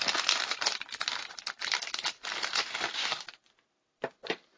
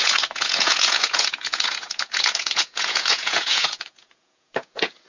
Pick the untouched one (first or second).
first